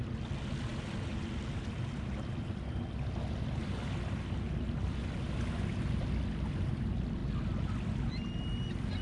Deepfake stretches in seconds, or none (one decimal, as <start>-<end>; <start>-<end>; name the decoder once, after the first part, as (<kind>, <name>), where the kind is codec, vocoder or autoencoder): 0.7-5.7 (vocoder, BigVGAN v2)